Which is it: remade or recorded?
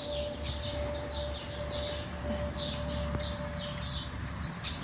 recorded